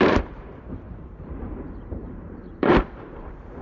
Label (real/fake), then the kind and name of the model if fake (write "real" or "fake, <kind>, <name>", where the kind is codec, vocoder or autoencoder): fake, vocoder, BigVGAN v2